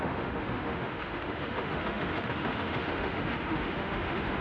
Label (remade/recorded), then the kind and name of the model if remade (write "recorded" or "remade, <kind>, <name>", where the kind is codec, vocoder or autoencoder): remade, autoencoder, DAC-VAE